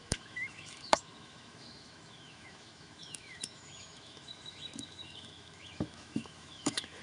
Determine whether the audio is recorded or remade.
remade